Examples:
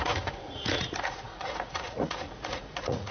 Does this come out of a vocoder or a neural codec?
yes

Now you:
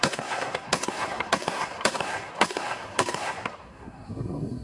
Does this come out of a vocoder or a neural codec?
yes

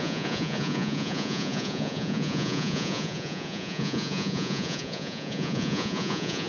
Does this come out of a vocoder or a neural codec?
yes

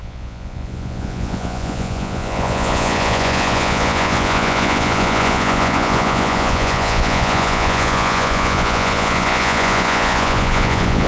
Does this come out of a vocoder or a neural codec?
yes